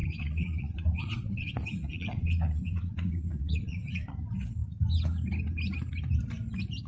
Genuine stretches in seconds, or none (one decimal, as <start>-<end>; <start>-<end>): 4.1-6.9